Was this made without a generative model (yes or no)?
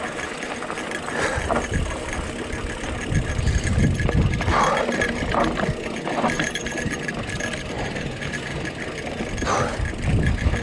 yes